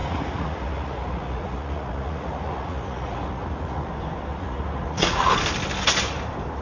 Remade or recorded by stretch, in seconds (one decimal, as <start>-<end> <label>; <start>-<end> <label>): 0.0-3.9 remade; 3.9-4.3 recorded; 4.3-5.3 remade; 5.3-6.6 recorded